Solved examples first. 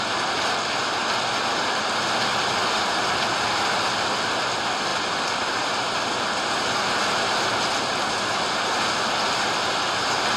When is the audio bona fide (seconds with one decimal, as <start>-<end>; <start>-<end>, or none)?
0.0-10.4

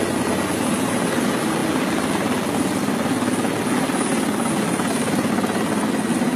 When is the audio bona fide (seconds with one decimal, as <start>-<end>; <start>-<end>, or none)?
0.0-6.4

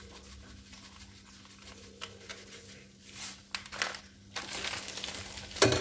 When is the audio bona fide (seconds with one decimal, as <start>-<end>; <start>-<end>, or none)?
0.0-5.8

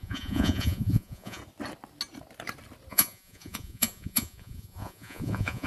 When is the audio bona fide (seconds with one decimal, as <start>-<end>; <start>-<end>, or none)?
1.4-2.9

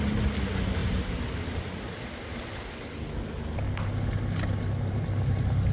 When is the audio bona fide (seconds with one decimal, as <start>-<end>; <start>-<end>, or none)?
0.0-5.7

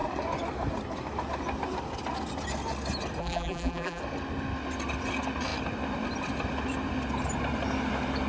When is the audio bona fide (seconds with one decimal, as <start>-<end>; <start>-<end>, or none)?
0.0-3.2; 4.0-8.3